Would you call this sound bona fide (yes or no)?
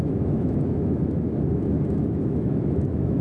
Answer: no